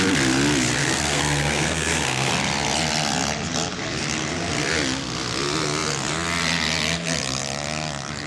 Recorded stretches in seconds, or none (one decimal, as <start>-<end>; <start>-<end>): 0.0-0.8; 2.3-8.3